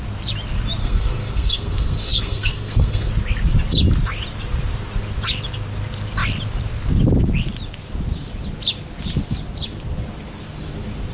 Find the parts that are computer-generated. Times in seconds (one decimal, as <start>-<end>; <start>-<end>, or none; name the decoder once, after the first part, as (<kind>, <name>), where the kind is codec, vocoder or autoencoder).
0.8-3.1 (codec, SNAC)